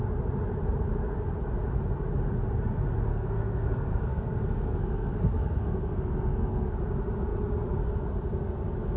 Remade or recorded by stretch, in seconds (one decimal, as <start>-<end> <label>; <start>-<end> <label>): 0.0-3.1 recorded; 3.1-6.7 remade; 6.7-9.0 recorded